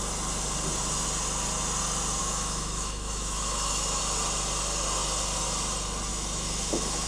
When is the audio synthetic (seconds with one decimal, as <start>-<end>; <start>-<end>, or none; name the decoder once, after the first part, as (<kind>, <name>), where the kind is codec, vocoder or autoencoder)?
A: 2.2-4.0 (autoencoder, DAC-VAE); 6.1-7.1